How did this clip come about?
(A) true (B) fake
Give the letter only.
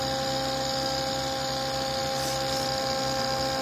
A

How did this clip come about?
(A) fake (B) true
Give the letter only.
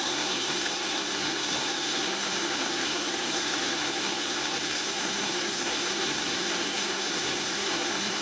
A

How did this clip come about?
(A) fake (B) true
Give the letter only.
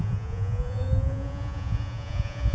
A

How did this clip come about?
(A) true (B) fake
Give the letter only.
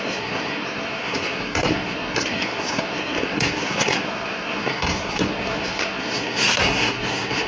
B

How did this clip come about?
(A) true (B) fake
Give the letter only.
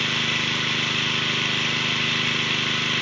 A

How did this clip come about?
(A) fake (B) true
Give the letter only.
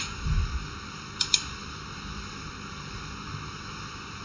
B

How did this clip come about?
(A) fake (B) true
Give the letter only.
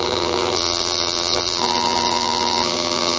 A